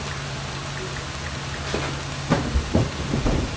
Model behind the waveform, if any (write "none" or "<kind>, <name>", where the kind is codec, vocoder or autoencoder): none